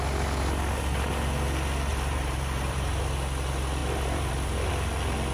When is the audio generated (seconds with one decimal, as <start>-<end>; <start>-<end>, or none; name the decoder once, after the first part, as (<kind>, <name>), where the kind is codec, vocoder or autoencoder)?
1.9-3.0 (vocoder, BigVGAN v2); 3.8-4.7